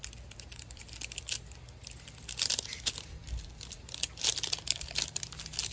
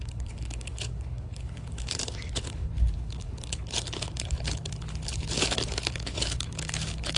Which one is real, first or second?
first